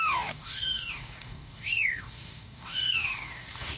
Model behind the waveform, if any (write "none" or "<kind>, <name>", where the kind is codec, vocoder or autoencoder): codec, DAC